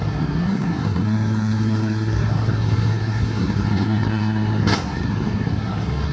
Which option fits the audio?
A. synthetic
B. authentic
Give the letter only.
A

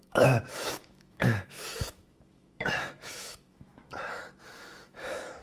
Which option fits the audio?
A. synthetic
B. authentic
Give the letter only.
A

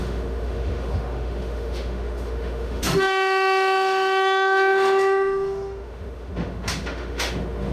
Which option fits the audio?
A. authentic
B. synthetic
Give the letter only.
B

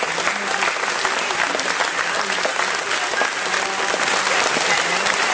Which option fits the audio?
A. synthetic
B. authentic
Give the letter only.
B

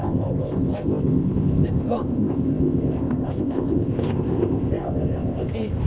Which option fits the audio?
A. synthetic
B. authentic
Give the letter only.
A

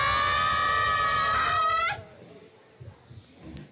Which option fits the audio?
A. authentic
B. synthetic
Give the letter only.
A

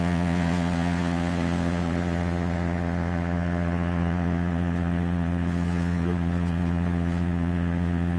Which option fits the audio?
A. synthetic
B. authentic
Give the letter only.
A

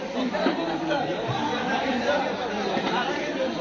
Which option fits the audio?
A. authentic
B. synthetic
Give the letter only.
B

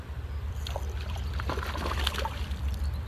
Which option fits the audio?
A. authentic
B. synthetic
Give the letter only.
B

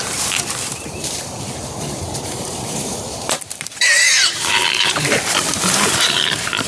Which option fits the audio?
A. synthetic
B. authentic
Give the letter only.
A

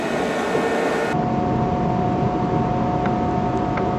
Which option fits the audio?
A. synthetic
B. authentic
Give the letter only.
B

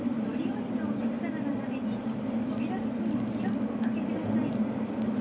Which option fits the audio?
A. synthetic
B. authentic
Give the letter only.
B